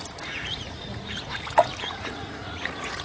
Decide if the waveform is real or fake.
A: fake